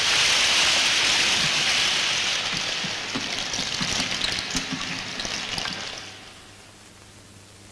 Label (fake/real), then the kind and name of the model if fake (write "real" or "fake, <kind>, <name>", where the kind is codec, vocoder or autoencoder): real